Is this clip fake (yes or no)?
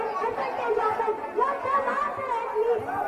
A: no